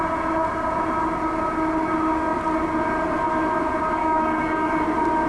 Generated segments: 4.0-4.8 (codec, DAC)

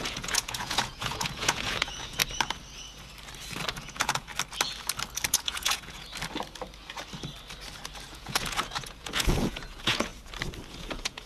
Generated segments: 0.0-2.2 (vocoder, Vocos); 3.7-4.3; 5.3-6.1; 8.1-10.1; 10.7-11.3

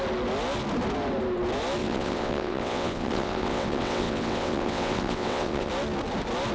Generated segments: 1.8-5.7 (vocoder, WaveNeXt)